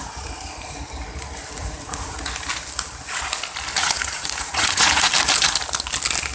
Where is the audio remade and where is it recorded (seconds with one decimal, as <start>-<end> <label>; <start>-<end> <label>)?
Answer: 0.0-1.6 recorded; 1.6-2.2 remade; 2.2-3.8 recorded; 3.8-5.1 remade; 5.1-6.3 recorded